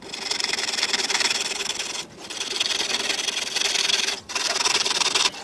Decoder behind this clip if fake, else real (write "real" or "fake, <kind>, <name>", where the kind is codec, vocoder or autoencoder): real